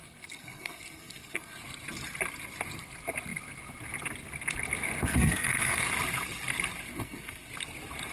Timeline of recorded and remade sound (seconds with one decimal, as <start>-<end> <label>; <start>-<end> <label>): 0.0-1.6 remade; 1.6-5.0 recorded; 5.0-5.8 remade; 5.8-6.9 recorded; 6.9-7.5 remade; 7.5-8.1 recorded